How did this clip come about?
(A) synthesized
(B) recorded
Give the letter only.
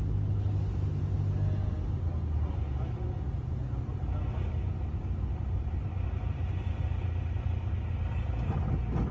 B